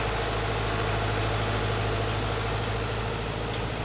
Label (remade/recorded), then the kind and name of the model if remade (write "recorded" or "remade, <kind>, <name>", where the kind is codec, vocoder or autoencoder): recorded